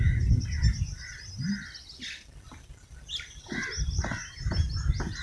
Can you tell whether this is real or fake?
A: real